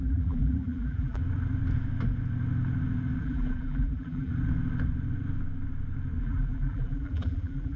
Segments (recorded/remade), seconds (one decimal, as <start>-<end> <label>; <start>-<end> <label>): 0.0-1.2 remade; 1.2-3.2 recorded; 3.2-4.3 remade; 4.3-6.2 recorded; 6.2-7.8 remade